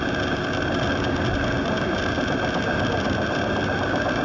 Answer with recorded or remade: recorded